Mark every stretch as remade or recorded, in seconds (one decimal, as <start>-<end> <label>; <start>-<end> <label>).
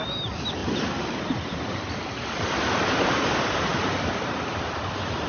0.0-5.3 recorded